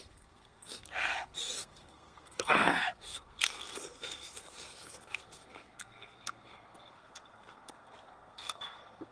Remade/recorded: remade